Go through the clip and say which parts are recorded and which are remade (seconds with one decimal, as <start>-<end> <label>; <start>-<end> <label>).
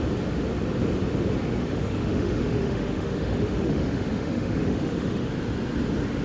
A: 0.0-1.6 recorded; 1.6-5.3 remade; 5.3-6.2 recorded